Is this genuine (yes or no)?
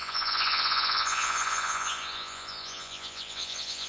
no